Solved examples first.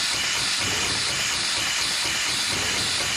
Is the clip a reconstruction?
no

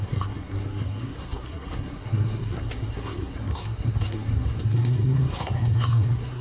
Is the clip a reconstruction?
yes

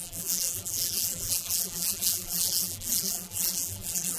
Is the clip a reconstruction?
yes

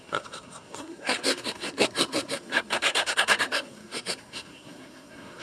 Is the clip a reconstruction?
yes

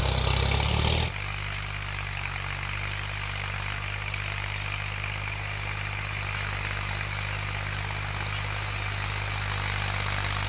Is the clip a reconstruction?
no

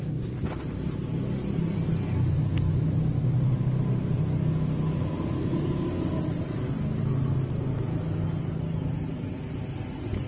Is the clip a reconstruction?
no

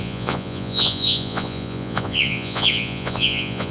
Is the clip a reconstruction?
yes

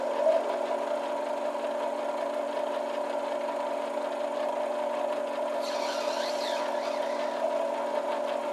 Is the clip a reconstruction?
no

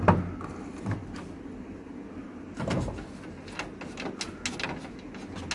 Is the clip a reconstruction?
no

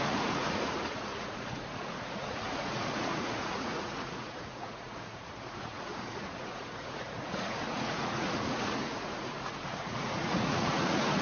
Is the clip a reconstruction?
yes